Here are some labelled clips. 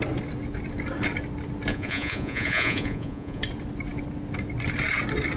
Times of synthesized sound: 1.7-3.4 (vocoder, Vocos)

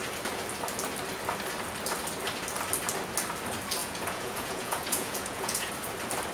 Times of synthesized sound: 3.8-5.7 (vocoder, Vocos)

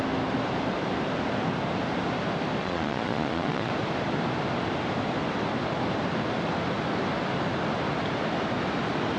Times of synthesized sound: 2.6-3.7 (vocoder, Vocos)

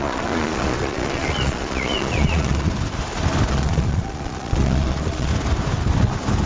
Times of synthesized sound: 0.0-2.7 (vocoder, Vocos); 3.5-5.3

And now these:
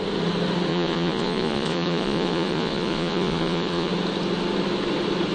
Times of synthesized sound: 0.7-3.9 (vocoder, Vocos)

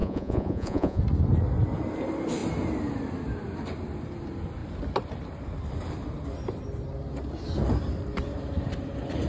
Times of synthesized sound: 0.0-1.0 (vocoder, Vocos)

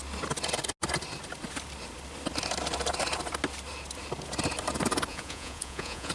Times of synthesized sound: 5.1-6.1 (vocoder, Vocos)